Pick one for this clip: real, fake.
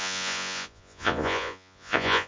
fake